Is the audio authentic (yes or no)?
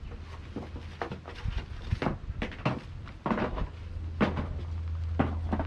yes